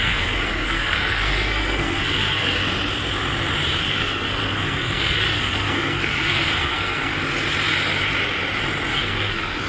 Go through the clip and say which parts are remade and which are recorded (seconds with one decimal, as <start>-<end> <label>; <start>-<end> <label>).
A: 0.0-2.6 remade; 2.6-3.8 recorded; 3.8-7.1 remade; 7.1-8.9 recorded; 8.9-9.7 remade